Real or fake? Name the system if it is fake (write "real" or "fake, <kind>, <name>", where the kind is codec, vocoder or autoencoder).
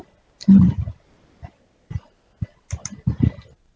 real